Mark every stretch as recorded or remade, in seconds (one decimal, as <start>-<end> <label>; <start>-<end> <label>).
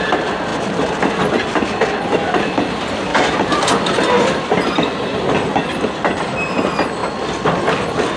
0.0-8.2 recorded